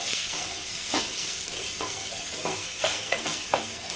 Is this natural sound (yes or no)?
no